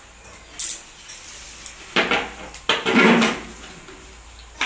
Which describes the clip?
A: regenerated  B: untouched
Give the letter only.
B